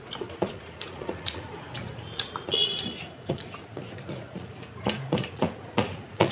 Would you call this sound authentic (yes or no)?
no